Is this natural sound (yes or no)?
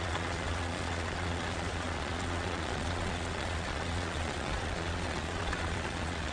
no